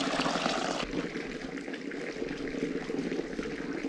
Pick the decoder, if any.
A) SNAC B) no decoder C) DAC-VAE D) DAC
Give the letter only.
B